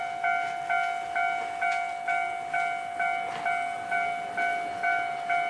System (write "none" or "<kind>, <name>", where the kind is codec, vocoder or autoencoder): none